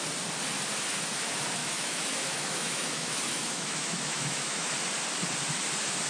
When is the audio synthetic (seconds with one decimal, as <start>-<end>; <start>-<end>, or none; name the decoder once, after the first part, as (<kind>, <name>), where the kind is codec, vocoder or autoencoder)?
1.6-4.7 (autoencoder, DAC-VAE)